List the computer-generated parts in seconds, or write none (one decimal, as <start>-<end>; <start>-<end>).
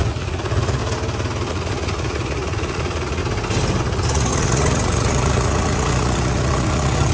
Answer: 0.0-0.8; 1.5-3.2; 3.8-7.1